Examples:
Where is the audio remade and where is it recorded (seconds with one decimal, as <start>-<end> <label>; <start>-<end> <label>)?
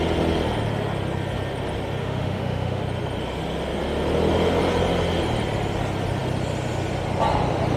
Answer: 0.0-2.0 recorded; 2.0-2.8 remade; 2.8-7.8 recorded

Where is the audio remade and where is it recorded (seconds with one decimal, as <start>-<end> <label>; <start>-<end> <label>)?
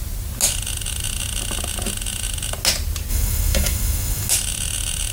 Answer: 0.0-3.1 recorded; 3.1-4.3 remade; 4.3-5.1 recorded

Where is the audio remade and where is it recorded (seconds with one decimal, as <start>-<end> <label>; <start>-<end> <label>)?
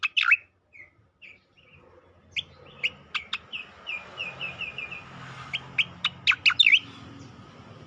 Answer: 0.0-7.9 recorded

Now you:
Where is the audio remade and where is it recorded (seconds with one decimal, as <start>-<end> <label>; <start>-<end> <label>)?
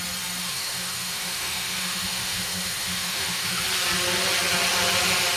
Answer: 0.0-0.4 recorded; 0.4-3.6 remade; 3.6-5.4 recorded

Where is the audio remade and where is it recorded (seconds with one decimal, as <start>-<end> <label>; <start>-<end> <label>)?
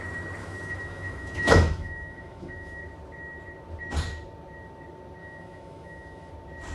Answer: 0.0-0.4 recorded; 0.4-2.8 remade; 2.8-5.2 recorded; 5.2-6.3 remade; 6.3-6.7 recorded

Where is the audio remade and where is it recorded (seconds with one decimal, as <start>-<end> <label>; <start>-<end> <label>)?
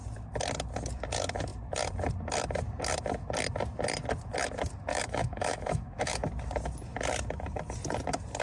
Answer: 0.0-4.9 recorded; 4.9-6.3 remade; 6.3-8.4 recorded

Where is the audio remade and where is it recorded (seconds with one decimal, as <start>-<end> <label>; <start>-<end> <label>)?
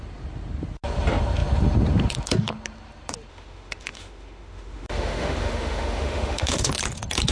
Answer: 0.0-3.3 recorded; 3.3-6.7 remade; 6.7-7.3 recorded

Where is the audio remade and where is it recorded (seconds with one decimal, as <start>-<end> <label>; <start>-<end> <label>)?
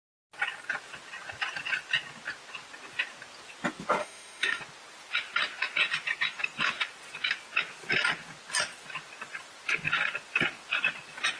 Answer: 0.0-4.0 recorded; 4.0-4.6 remade; 4.6-11.4 recorded